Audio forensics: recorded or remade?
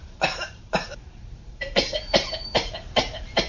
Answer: remade